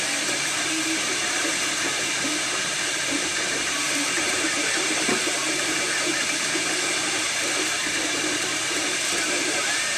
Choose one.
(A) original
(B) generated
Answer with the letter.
B